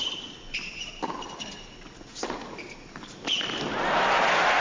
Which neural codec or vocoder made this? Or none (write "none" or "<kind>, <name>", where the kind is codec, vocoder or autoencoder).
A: none